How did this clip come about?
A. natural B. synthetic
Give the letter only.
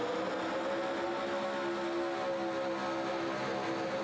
A